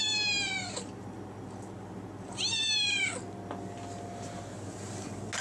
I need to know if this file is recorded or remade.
recorded